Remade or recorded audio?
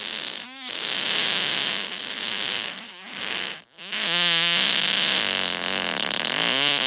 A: recorded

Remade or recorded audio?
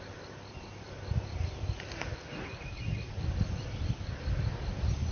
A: recorded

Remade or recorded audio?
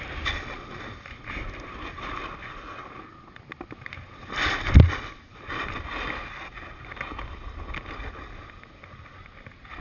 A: recorded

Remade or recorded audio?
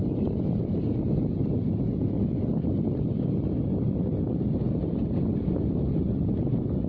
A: recorded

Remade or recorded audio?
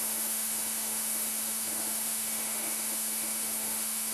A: remade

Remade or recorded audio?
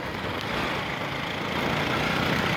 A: recorded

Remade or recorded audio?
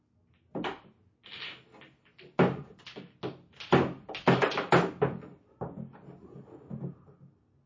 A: recorded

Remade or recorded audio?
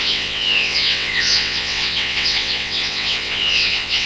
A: remade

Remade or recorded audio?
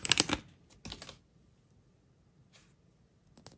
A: recorded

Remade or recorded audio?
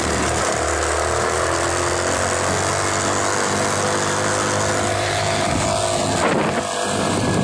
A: recorded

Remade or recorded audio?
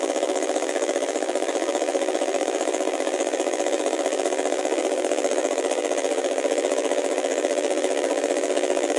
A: remade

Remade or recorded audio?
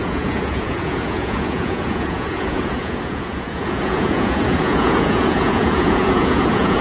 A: remade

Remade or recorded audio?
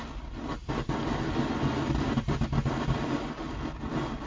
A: recorded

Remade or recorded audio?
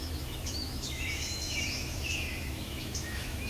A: remade